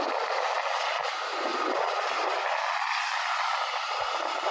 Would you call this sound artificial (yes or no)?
no